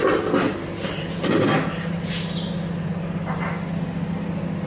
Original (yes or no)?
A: yes